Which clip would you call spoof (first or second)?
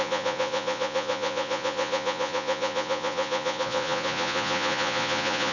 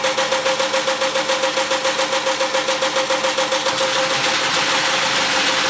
first